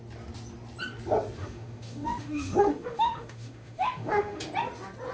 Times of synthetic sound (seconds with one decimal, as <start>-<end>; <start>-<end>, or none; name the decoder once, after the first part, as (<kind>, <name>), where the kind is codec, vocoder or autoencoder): 1.4-4.4 (autoencoder, DAC-VAE)